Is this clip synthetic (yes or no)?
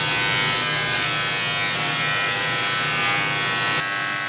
no